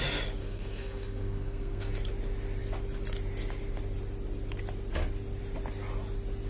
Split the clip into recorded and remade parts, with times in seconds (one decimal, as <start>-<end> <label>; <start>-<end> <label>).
0.0-0.4 recorded; 0.4-1.9 remade; 1.9-6.5 recorded

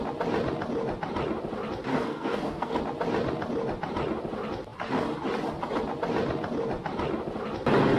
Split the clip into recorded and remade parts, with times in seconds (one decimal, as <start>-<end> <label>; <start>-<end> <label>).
0.0-1.9 recorded; 1.9-2.8 remade; 2.8-8.0 recorded